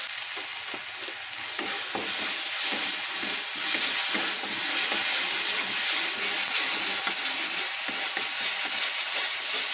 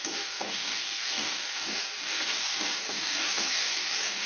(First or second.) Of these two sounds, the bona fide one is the first